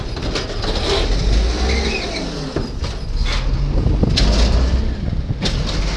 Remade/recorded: recorded